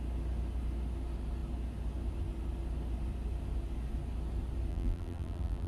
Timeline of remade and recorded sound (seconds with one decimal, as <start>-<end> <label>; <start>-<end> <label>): 0.0-4.7 recorded; 4.7-5.7 remade